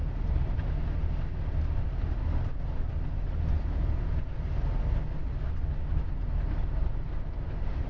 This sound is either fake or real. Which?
real